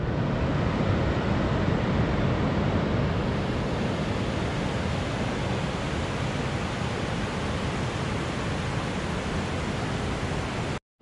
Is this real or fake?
real